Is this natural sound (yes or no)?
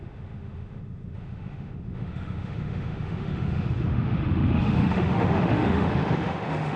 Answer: no